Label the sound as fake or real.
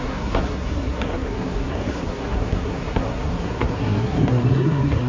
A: fake